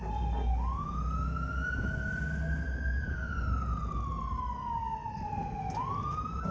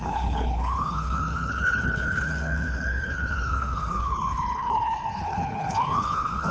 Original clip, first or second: first